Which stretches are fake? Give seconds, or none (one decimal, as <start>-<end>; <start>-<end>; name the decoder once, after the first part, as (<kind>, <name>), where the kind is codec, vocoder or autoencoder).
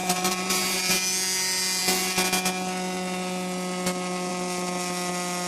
0.0-0.9 (vocoder, BigVGAN v2)